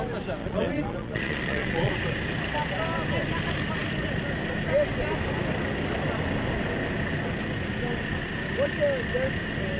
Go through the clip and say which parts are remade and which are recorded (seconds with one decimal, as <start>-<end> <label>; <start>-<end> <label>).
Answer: 0.0-0.4 recorded; 0.4-1.9 remade; 1.9-9.8 recorded